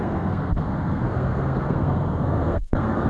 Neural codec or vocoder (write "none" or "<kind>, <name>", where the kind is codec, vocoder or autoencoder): codec, SNAC